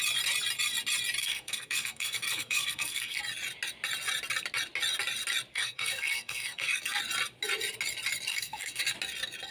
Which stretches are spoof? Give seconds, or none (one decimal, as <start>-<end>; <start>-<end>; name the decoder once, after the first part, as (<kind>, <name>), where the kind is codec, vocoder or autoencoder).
1.2-3.2 (codec, SNAC); 5.5-7.0; 8.3-8.8